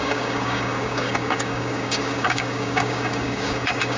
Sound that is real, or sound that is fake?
fake